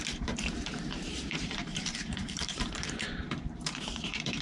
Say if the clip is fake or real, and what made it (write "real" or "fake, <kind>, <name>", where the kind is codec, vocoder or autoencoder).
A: fake, vocoder, BigVGAN v2